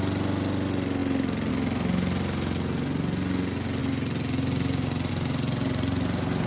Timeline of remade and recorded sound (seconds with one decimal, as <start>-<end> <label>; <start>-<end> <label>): 0.0-6.5 recorded

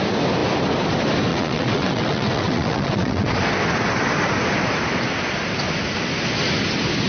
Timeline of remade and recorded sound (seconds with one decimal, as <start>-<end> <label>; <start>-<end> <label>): 0.0-1.3 recorded; 1.3-3.3 remade; 3.3-7.1 recorded

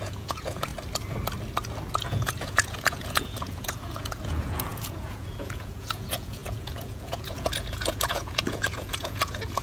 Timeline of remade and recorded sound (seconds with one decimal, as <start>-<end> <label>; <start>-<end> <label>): 0.0-0.7 remade; 0.7-1.9 recorded; 1.9-9.6 remade